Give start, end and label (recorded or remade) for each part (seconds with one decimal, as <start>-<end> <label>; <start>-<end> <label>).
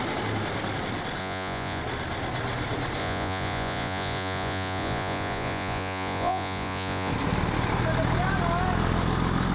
0.0-1.2 recorded; 1.2-1.8 remade; 1.8-3.0 recorded; 3.0-7.1 remade; 7.1-9.5 recorded